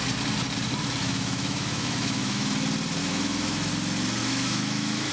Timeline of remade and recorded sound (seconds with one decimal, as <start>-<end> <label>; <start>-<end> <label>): 0.0-1.0 recorded; 1.0-2.5 remade; 2.5-3.0 recorded; 3.0-3.7 remade; 3.7-4.2 recorded; 4.2-5.1 remade